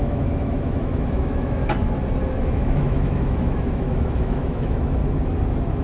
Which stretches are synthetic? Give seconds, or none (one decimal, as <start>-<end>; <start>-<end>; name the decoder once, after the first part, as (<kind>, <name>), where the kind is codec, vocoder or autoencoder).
0.0-1.6 (autoencoder, DAC-VAE); 2.3-5.0